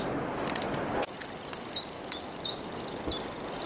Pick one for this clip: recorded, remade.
recorded